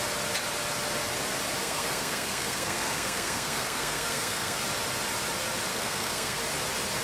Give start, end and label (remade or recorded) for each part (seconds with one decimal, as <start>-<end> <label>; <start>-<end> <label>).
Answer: 0.0-1.6 recorded; 1.6-4.6 remade; 4.6-5.7 recorded; 5.7-6.4 remade; 6.4-7.0 recorded